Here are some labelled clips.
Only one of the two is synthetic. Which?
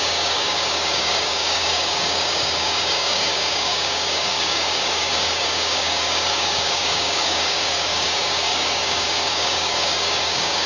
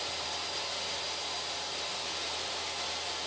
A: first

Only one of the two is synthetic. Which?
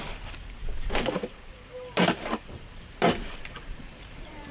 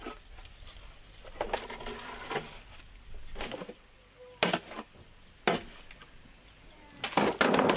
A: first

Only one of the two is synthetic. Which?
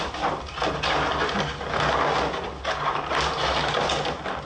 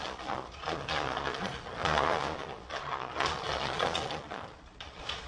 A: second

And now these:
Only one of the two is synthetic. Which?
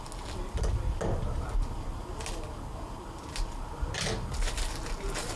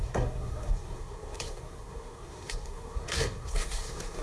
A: second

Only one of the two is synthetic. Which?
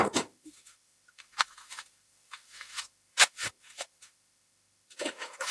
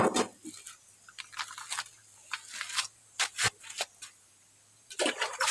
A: first